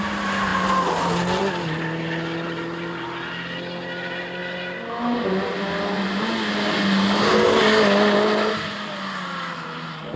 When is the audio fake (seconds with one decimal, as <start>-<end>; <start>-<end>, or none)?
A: none